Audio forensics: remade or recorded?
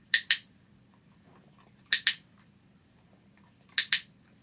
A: recorded